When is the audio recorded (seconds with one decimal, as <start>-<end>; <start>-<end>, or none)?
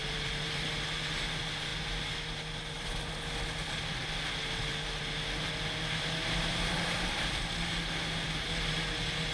0.7-6.5; 7.4-9.3